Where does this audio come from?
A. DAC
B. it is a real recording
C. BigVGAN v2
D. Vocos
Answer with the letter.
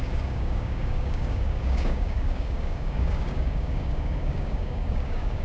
A